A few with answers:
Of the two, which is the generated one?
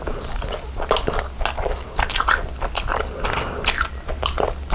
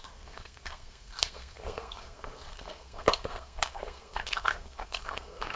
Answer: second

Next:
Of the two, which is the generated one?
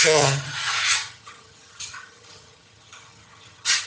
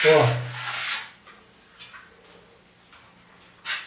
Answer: first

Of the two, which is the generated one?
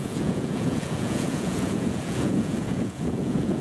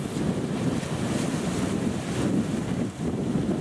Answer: first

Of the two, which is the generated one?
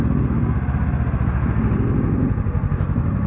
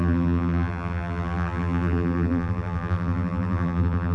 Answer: second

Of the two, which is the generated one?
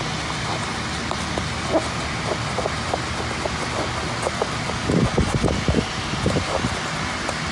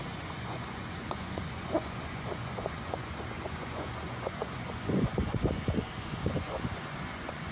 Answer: second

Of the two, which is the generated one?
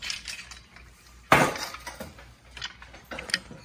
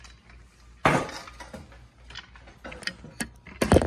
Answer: first